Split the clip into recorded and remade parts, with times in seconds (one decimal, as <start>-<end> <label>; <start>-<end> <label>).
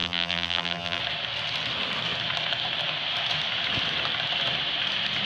0.0-1.0 remade; 1.0-5.3 recorded